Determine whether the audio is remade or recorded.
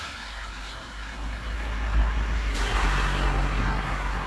remade